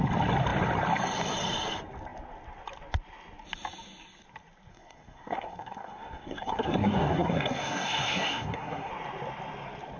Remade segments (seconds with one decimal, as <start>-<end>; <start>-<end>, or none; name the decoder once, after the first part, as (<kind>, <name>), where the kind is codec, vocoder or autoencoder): 4.7-8.9 (codec, SNAC)